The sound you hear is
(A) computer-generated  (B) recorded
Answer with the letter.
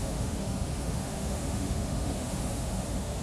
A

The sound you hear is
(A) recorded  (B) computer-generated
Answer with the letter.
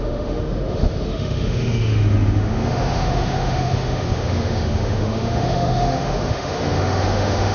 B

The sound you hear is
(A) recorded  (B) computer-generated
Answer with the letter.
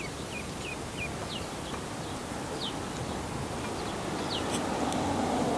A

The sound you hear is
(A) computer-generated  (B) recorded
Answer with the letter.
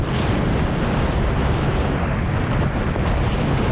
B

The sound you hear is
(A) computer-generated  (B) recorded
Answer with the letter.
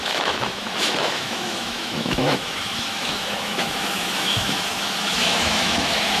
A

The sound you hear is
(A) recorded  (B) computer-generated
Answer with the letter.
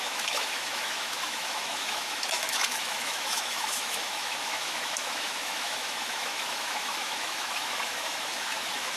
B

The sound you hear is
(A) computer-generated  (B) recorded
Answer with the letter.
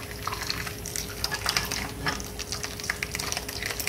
B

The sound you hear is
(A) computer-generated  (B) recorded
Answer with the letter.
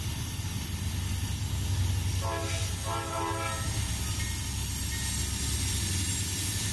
B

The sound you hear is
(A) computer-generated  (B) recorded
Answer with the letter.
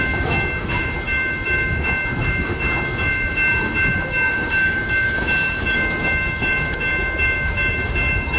A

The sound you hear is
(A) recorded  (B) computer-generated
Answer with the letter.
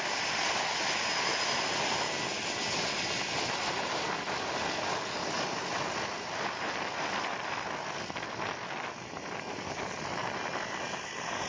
A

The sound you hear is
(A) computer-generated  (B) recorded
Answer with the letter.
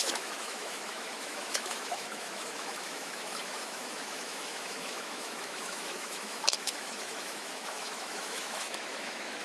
A